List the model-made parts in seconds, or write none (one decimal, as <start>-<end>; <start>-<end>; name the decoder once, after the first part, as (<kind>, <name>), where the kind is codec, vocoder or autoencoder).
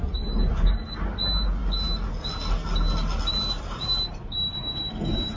none